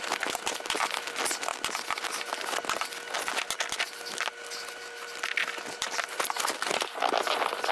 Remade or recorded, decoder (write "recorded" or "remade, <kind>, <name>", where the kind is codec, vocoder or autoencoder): recorded